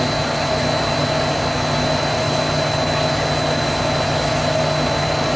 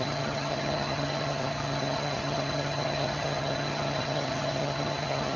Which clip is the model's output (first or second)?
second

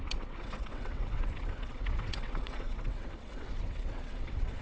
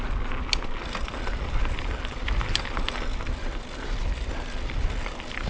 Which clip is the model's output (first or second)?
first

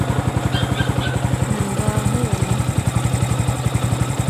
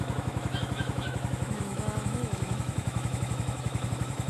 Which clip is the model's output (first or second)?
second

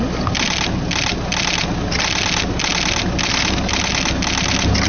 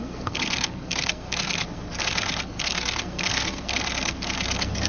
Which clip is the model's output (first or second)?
second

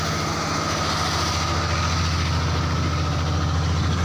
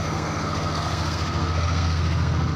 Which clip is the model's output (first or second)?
second